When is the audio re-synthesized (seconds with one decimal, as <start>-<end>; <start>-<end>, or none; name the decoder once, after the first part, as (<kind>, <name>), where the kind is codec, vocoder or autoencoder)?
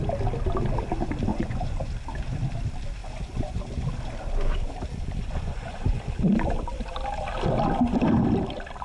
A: 1.3-1.9 (vocoder, Vocos); 3.0-3.6; 5.2-6.0